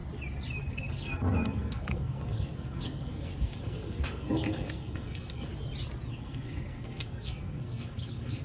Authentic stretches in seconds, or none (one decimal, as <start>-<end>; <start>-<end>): 0.0-0.7; 5.5-6.1